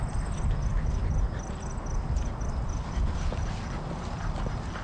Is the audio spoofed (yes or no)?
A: no